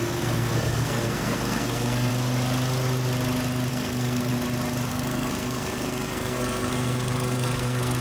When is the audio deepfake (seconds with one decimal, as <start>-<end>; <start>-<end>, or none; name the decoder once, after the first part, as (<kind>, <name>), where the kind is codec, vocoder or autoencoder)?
0.0-2.1 (codec, SNAC); 3.7-4.3; 4.9-8.0